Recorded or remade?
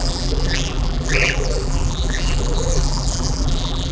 remade